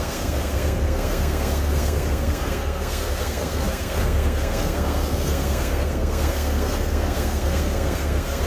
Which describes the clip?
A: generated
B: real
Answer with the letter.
A